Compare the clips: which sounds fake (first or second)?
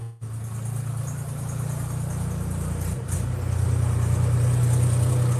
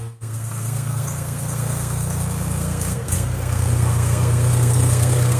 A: second